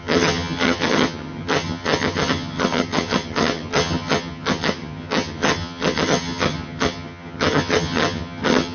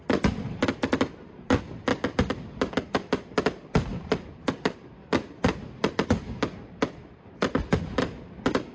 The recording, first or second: second